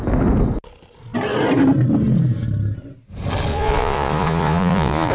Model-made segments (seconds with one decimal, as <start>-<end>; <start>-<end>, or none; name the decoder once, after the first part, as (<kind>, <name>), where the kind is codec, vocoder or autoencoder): 3.5-5.1 (vocoder, Vocos)